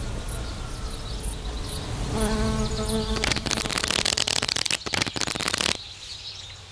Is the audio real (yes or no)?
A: yes